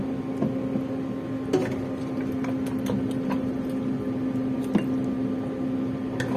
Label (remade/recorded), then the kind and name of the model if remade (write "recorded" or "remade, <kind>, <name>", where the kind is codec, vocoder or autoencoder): recorded